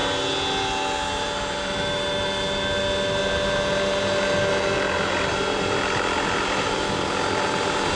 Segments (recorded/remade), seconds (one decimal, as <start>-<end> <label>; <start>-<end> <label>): 0.0-8.0 recorded